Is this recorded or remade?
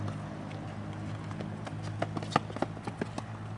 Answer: recorded